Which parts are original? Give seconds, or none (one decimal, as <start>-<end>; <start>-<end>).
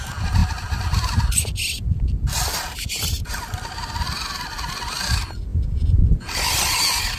0.0-5.5; 6.3-7.2